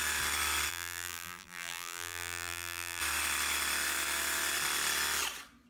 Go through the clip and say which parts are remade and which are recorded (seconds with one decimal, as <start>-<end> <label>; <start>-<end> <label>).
0.0-0.7 recorded; 0.7-3.0 remade; 3.0-5.7 recorded